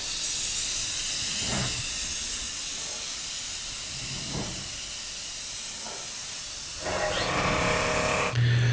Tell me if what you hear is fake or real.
real